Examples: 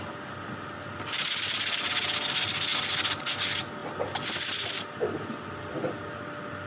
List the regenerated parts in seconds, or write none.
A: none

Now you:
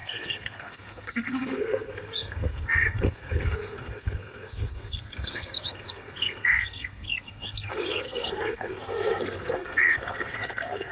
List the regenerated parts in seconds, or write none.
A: 0.0-10.9 (codec, SNAC)

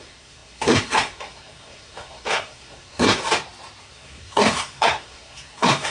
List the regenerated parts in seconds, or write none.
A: 0.0-3.2 (codec, SNAC); 3.8-5.9

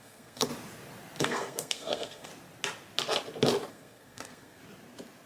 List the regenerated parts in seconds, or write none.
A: 0.0-0.5 (codec, SNAC); 1.2-2.3; 3.7-4.6

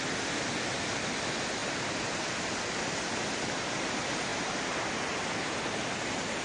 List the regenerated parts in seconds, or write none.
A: none